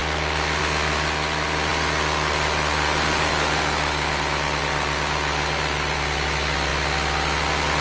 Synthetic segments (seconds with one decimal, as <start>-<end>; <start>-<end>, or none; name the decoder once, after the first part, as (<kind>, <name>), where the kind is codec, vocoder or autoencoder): 0.0-0.6 (vocoder, BigVGAN v2)